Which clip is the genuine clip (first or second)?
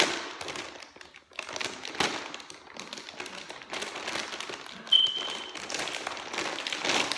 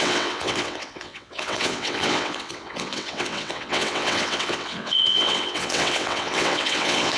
first